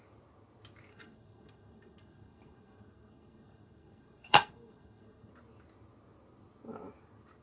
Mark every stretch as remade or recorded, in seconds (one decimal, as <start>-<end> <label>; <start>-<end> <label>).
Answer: 0.0-0.9 recorded; 0.9-5.3 remade; 5.3-7.4 recorded

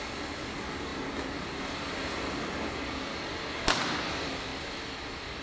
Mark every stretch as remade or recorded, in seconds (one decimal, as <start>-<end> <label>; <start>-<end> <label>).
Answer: 0.0-5.4 recorded

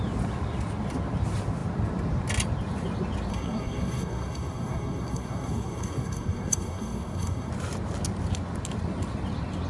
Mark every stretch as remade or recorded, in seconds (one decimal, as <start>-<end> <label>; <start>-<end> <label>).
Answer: 0.0-3.3 recorded; 3.3-7.5 remade; 7.5-9.7 recorded

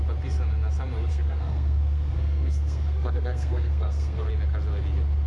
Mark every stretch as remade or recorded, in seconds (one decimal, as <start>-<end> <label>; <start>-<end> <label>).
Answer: 0.0-1.1 recorded; 1.1-4.3 remade; 4.3-5.3 recorded

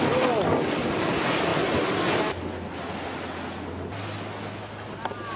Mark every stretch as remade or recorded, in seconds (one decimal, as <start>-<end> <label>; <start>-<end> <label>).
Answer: 0.0-5.4 recorded

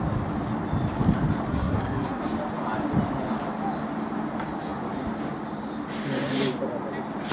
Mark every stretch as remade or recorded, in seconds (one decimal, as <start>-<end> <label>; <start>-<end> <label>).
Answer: 0.0-1.5 recorded; 1.5-2.2 remade; 2.2-7.3 recorded

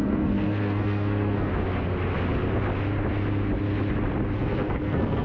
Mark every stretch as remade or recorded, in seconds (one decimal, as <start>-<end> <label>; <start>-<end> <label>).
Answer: 0.0-1.5 remade; 1.5-4.4 recorded; 4.4-5.2 remade